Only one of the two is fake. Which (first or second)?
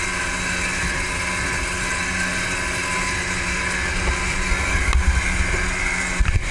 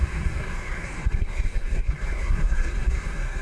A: second